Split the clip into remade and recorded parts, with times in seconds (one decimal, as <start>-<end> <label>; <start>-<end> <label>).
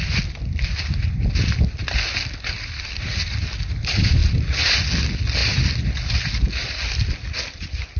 0.0-8.0 recorded